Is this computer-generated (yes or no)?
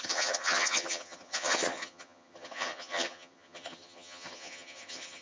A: yes